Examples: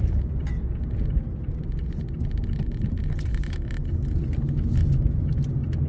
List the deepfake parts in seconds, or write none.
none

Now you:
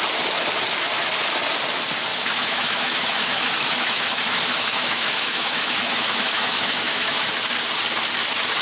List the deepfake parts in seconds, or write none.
2.1-7.3

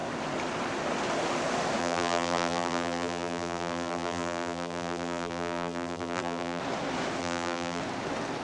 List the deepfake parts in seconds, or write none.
1.8-6.6; 7.2-7.8

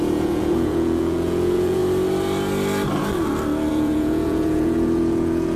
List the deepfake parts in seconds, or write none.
0.0-1.8; 3.7-5.6